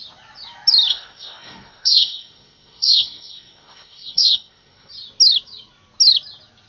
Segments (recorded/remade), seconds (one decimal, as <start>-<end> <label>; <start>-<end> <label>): 0.0-0.9 recorded; 0.9-4.9 remade; 4.9-6.7 recorded